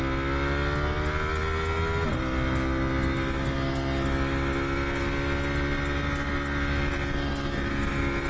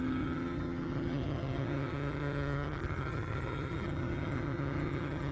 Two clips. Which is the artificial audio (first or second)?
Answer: second